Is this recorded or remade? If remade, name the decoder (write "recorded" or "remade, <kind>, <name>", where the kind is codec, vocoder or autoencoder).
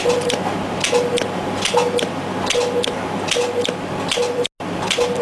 recorded